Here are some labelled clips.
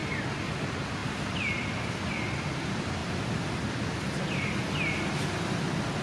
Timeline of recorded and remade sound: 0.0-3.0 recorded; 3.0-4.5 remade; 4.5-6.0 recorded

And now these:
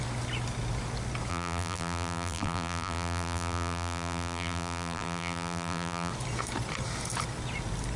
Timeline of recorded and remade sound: 0.0-1.3 recorded; 1.3-6.1 remade; 6.1-8.0 recorded